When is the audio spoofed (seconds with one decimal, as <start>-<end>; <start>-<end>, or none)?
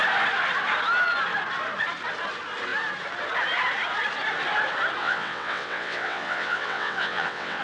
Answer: 5.0-7.6